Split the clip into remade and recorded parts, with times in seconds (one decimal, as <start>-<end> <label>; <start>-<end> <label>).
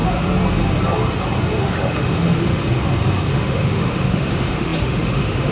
0.0-1.6 recorded; 1.6-2.6 remade; 2.6-3.3 recorded; 3.3-5.5 remade